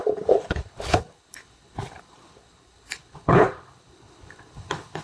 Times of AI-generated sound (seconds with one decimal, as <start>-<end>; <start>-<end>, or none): 0.0-5.0